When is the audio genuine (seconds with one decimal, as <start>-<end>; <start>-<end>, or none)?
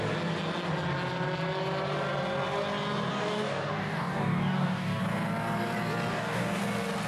0.0-3.1; 5.0-6.1; 6.6-7.1